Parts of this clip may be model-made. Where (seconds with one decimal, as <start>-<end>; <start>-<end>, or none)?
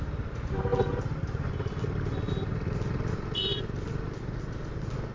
none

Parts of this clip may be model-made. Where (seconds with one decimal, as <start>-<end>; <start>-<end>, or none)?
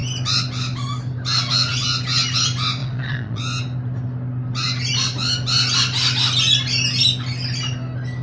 2.8-3.4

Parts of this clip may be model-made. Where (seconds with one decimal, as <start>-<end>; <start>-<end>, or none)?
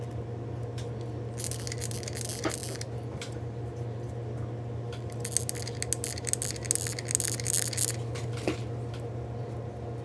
none